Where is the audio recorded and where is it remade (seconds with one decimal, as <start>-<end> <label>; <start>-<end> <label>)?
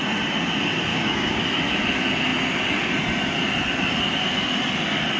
0.0-0.9 recorded; 0.9-1.4 remade; 1.4-5.2 recorded